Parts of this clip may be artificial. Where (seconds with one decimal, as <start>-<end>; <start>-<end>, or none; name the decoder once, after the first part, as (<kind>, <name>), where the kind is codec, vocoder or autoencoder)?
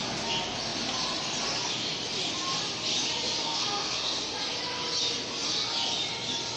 3.4-4.2 (codec, SNAC)